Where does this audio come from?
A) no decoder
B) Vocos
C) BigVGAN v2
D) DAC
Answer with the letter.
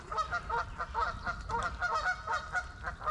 A